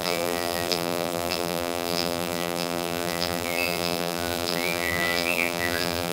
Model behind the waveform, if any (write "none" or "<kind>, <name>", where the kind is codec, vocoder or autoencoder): vocoder, BigVGAN v2